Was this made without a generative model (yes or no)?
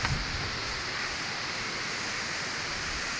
yes